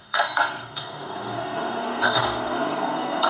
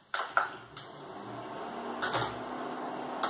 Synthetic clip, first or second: first